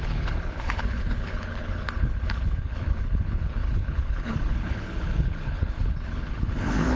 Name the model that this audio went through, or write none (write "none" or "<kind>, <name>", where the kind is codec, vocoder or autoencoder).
codec, HILCodec